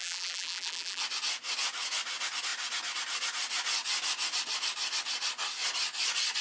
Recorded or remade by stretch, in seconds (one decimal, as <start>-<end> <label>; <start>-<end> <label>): 0.0-1.0 remade; 1.0-6.4 recorded